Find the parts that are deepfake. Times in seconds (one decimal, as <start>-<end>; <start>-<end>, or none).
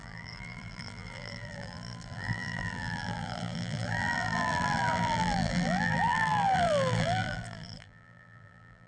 0.0-8.9